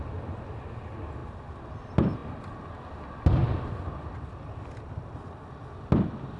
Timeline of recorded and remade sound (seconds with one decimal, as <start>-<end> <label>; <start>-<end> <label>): 0.0-6.4 recorded